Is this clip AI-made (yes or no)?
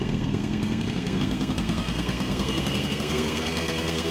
yes